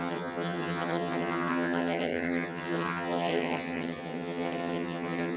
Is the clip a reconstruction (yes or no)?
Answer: yes